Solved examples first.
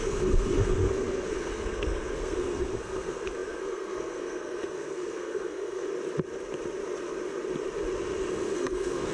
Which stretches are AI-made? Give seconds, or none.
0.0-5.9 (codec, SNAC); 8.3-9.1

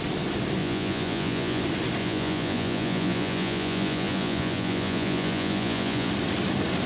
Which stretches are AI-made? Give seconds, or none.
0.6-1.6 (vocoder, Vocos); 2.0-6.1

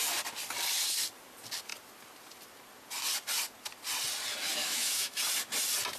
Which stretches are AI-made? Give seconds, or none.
4.6-5.2 (autoencoder, DAC-VAE)

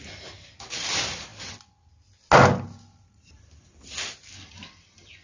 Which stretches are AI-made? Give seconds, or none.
none